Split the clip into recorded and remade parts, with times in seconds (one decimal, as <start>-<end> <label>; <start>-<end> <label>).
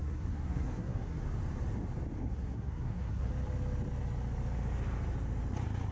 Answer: 0.0-1.2 remade; 1.2-2.2 recorded; 2.2-3.3 remade; 3.3-5.9 recorded